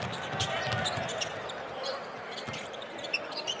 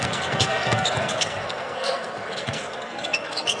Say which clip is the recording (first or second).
first